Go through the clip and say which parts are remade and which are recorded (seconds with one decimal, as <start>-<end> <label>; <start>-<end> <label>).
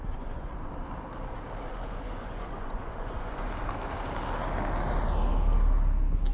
0.0-0.7 remade; 0.7-1.7 recorded; 1.7-3.5 remade; 3.5-6.3 recorded